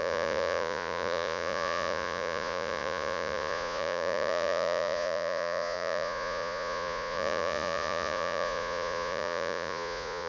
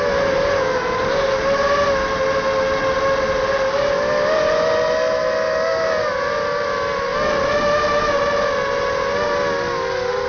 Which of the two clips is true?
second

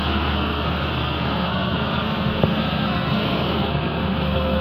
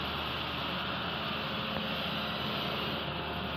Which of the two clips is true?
second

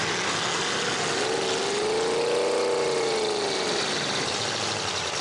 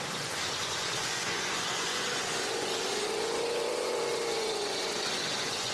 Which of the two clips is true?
first